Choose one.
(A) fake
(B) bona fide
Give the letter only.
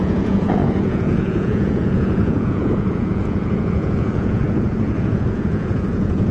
A